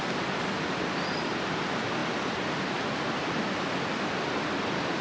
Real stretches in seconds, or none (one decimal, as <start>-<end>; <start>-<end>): 0.0-5.0